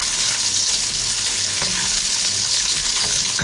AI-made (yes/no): yes